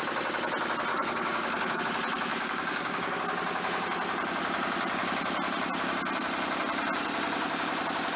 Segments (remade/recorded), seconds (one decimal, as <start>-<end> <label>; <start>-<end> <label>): 0.0-0.9 recorded; 0.9-1.8 remade; 1.8-2.3 recorded; 2.3-3.2 remade; 3.2-8.2 recorded